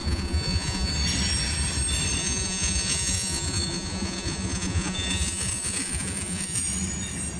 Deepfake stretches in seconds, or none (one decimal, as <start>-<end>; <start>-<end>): 0.0-0.9; 2.2-6.6